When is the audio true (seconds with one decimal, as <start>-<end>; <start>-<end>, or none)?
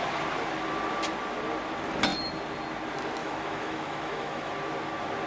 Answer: 0.0-3.2; 4.5-5.3